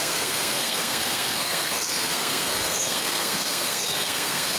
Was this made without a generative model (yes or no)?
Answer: no